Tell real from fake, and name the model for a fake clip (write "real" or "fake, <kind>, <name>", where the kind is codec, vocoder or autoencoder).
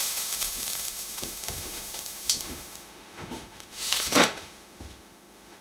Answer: fake, autoencoder, DAC-VAE